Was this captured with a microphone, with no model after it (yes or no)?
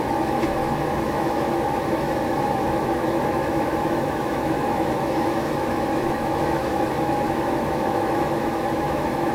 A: no